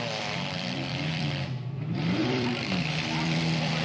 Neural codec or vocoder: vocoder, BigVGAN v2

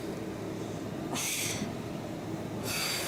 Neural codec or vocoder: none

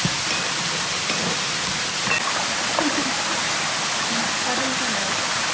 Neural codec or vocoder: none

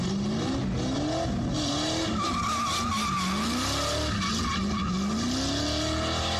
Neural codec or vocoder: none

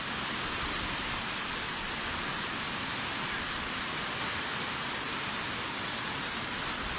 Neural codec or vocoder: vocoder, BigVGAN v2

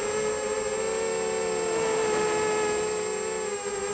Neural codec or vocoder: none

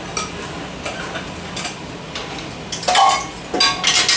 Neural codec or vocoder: none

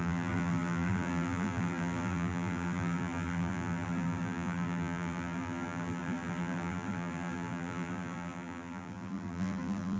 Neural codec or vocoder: vocoder, BigVGAN v2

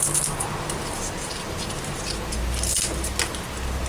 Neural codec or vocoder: none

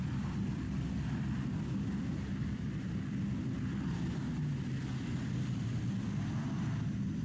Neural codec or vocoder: none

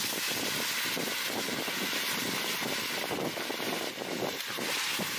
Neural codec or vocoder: none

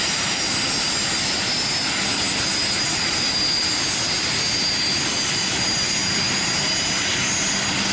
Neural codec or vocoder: none